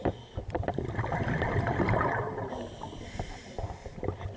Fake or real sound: real